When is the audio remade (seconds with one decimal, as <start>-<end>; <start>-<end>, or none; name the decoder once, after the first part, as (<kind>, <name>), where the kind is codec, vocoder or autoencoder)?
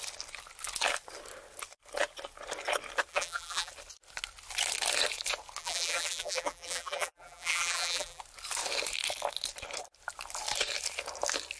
3.1-3.7 (vocoder, BigVGAN v2); 5.6-8.2